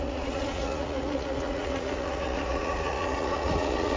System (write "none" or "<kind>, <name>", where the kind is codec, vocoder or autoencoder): vocoder, Vocos